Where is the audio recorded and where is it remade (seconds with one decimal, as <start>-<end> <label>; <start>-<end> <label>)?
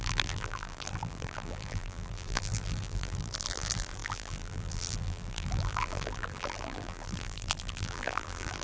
0.0-8.6 remade